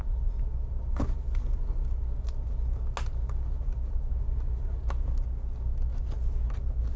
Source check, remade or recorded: recorded